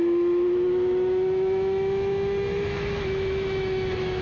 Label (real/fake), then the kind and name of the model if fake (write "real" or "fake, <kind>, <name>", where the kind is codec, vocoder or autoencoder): fake, autoencoder, DAC-VAE